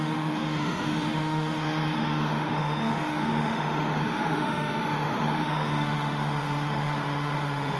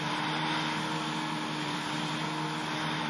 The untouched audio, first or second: second